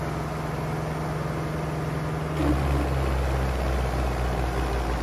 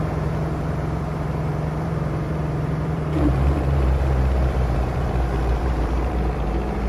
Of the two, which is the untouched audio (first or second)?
first